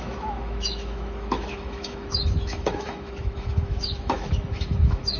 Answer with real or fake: fake